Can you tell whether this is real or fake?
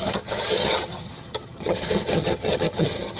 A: fake